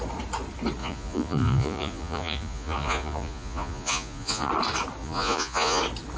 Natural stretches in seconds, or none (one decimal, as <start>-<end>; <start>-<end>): 0.0-0.8; 4.5-5.0; 5.8-6.2